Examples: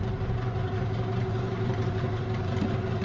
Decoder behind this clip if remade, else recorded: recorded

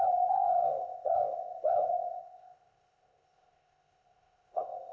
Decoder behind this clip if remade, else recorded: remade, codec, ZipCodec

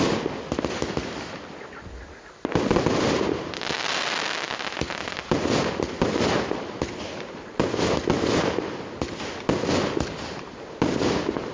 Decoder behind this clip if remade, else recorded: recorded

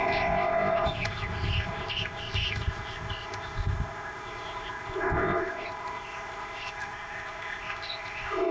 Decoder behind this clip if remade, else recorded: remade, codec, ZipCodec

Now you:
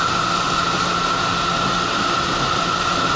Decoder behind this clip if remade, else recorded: recorded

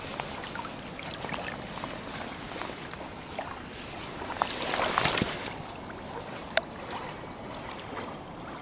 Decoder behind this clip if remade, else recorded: recorded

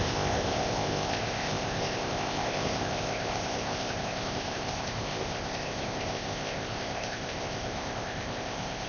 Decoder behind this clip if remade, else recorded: remade, codec, ZipCodec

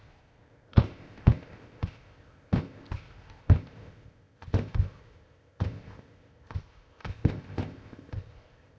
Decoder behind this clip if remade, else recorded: remade, codec, ZipCodec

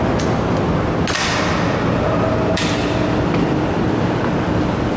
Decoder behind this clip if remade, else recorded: recorded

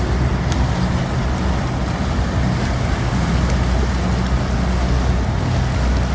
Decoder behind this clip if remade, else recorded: recorded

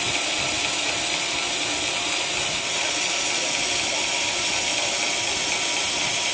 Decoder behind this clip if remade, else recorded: recorded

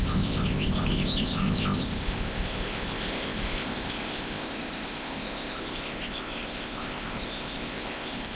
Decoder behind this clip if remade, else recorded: remade, codec, ZipCodec